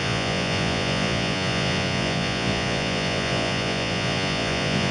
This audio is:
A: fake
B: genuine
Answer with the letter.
A